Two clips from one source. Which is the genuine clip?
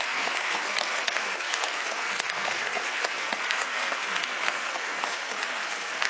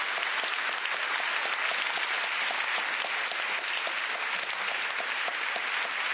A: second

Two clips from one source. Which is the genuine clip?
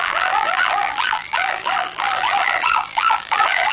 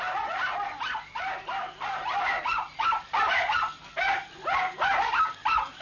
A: second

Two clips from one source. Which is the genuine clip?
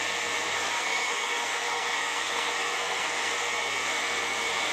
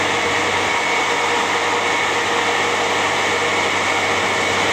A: second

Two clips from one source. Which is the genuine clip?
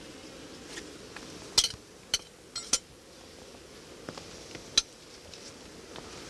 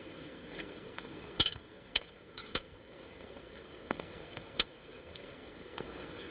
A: first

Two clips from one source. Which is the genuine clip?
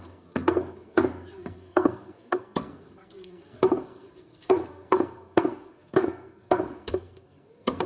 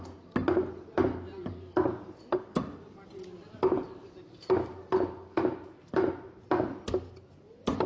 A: second